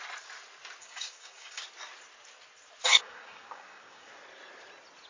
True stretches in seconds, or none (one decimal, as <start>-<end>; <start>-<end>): 0.0-0.8; 1.6-2.9; 4.1-5.1